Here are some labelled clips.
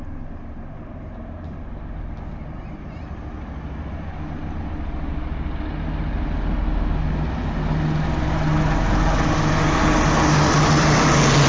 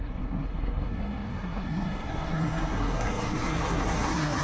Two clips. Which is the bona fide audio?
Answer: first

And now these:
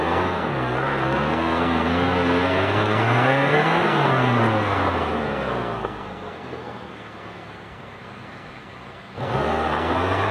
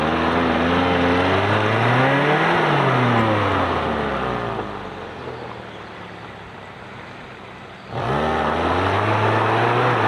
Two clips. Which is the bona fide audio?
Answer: second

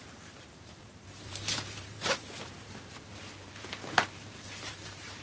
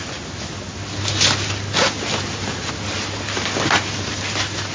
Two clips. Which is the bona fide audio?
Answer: second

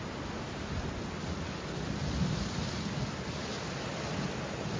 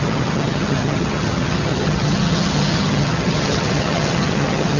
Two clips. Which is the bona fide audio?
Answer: first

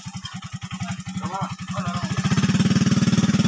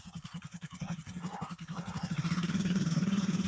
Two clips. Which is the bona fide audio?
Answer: first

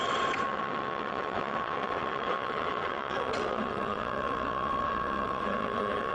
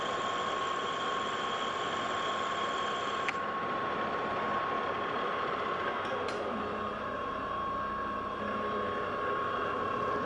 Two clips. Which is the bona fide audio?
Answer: second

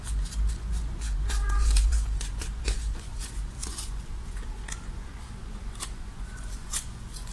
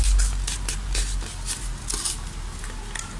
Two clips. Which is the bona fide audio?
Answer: second